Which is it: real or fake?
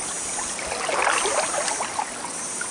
real